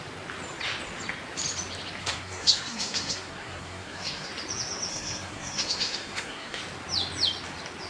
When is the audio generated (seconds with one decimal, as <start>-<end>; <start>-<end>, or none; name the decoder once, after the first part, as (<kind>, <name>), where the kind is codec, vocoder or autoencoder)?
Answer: 2.0-4.3 (codec, SNAC); 4.9-6.6